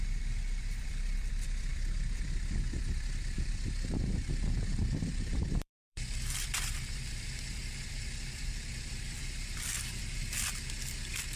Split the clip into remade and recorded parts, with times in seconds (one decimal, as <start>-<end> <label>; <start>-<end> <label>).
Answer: 0.0-10.2 remade; 10.2-11.4 recorded